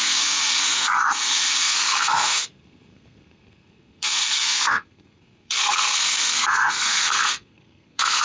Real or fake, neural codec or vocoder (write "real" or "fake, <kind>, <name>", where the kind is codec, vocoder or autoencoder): fake, codec, SNAC